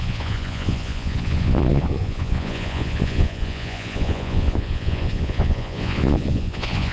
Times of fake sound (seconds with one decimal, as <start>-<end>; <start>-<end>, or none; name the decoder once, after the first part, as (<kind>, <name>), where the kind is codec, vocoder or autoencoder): 0.0-6.9 (vocoder, Vocos)